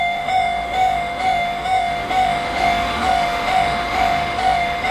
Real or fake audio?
fake